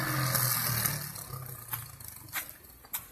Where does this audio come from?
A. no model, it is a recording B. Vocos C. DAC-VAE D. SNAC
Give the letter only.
A